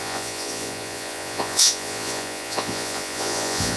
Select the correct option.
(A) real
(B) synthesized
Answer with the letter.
B